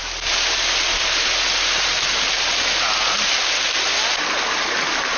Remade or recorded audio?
recorded